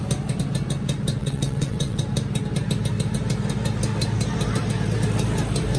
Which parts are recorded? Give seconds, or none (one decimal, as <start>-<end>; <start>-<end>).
0.0-1.2; 2.0-5.8